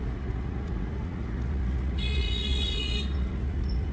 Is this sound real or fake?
fake